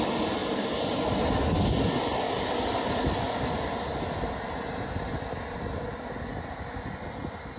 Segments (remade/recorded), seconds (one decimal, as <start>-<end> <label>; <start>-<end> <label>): 0.0-7.6 recorded